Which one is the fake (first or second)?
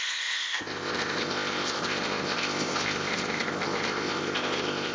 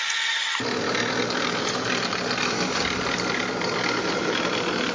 first